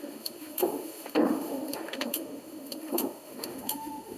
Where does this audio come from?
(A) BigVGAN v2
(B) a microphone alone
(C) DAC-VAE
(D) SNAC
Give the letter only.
C